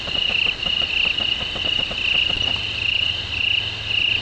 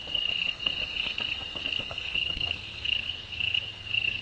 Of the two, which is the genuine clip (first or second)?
first